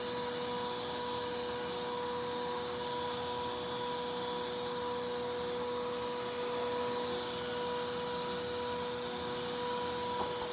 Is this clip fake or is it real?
real